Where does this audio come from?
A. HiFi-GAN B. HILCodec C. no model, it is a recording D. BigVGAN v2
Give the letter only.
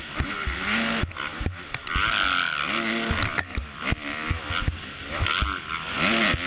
C